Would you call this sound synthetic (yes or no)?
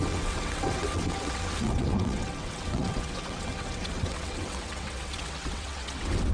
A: yes